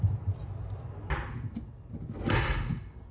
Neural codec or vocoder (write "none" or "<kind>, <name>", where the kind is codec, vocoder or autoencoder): none